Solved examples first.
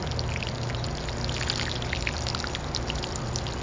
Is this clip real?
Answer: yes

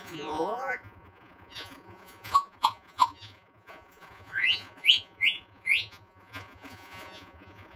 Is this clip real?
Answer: no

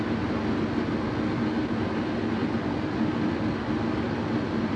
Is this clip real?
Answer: yes